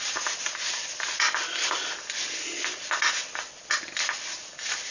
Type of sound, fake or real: real